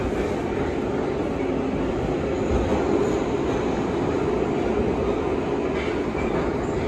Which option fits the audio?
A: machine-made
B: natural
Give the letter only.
B